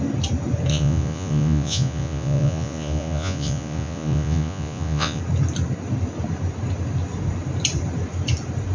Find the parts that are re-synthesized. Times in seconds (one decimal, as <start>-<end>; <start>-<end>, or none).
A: 0.7-5.2